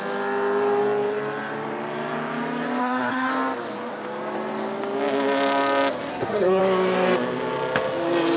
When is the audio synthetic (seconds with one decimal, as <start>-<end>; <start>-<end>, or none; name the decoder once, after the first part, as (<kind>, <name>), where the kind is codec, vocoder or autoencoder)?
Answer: 2.8-3.3 (codec, SNAC); 6.1-6.6